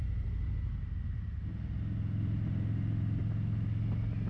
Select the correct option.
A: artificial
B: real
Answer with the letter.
B